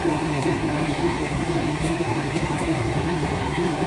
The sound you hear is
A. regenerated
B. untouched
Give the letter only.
A